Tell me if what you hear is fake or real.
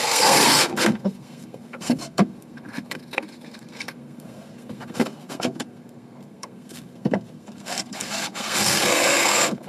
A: fake